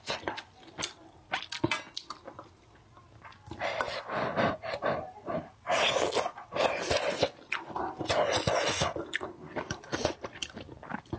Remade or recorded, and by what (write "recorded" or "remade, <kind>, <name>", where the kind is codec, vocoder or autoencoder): recorded